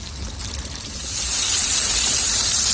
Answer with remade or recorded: recorded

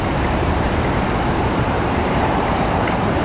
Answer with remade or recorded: remade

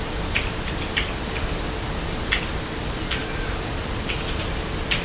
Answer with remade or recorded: recorded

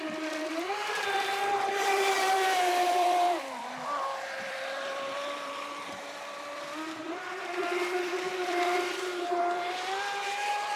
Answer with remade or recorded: remade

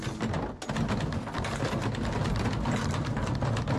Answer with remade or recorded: recorded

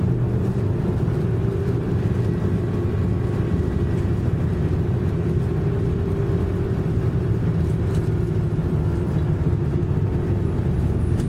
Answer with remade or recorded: recorded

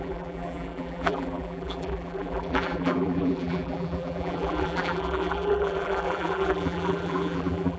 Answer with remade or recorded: remade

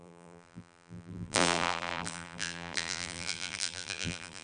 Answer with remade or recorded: remade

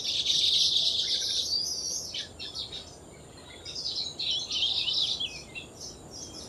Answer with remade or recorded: recorded